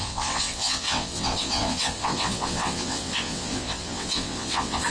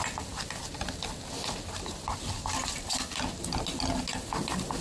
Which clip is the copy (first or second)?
first